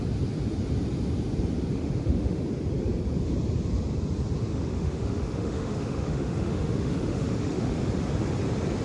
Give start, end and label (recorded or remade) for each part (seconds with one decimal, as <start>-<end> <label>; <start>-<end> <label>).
0.0-1.7 recorded; 1.7-2.4 remade; 2.4-4.5 recorded; 4.5-7.8 remade; 7.8-8.8 recorded